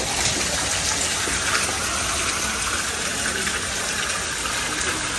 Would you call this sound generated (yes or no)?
no